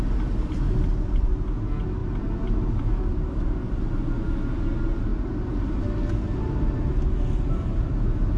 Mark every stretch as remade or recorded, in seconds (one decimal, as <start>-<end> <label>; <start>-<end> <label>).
0.0-8.4 recorded